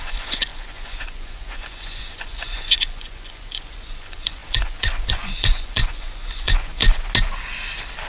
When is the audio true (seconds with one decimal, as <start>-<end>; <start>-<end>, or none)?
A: 6.8-8.1